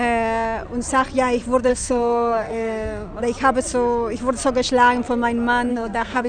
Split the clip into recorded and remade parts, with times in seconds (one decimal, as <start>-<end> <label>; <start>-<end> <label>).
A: 0.0-1.7 recorded; 1.7-3.2 remade; 3.2-5.7 recorded; 5.7-6.3 remade